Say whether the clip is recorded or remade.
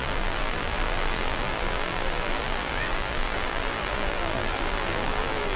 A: remade